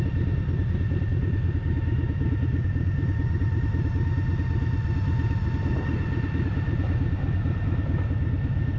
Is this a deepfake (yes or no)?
no